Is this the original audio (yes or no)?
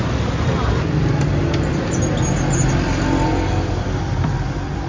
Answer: yes